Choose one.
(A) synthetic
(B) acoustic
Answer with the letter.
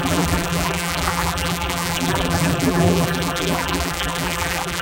A